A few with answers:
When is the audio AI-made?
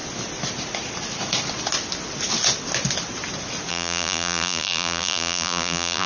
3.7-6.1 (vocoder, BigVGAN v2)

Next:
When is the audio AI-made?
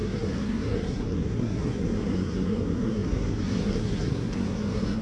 0.0-5.0 (codec, SNAC)